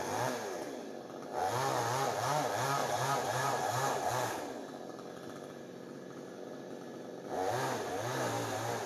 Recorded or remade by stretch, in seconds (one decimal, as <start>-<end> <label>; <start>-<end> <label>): 0.0-2.8 recorded; 2.8-4.1 remade; 4.1-8.9 recorded